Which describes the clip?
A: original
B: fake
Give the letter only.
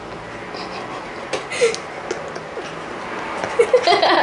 A